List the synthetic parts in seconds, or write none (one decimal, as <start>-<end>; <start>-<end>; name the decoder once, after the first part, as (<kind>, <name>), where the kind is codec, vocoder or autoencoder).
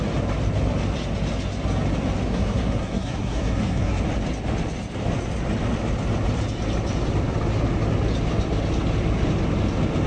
2.3-4.0 (codec, SNAC)